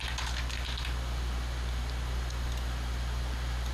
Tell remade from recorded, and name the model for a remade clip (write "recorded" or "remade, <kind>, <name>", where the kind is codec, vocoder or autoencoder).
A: recorded